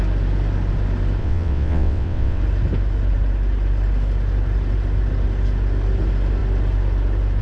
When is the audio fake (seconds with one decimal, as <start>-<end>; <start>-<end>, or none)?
1.2-2.4